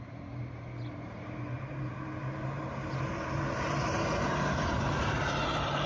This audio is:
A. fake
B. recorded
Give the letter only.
A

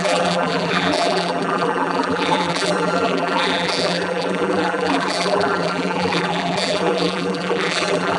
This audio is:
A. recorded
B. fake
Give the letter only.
B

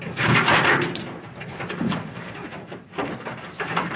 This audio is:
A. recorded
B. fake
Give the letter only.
B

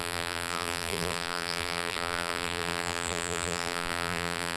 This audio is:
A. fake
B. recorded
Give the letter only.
A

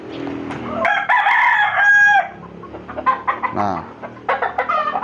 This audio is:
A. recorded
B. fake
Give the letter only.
A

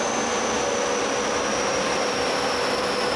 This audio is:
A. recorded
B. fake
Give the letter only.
A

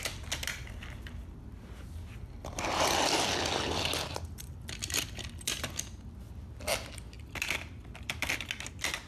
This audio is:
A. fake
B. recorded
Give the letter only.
B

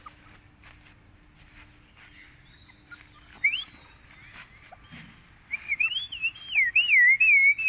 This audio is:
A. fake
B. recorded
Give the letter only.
B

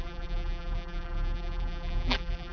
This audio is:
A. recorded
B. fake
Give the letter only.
B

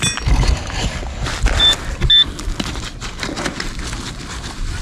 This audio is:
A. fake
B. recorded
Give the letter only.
B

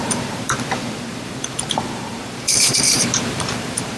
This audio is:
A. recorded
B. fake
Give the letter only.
B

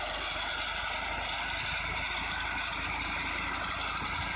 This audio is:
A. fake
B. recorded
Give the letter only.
B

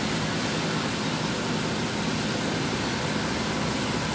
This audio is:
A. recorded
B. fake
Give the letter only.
A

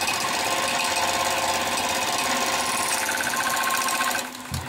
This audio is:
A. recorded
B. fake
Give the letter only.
A